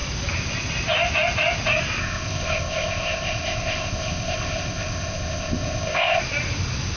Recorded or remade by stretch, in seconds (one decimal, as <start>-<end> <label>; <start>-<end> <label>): 0.0-2.0 recorded; 2.0-6.2 remade; 6.2-7.0 recorded